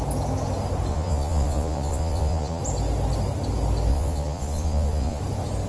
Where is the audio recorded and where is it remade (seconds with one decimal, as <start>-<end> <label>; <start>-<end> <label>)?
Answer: 0.0-0.9 recorded; 0.9-2.6 remade; 2.6-3.9 recorded; 3.9-5.2 remade; 5.2-5.7 recorded